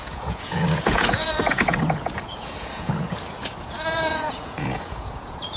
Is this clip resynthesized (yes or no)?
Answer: yes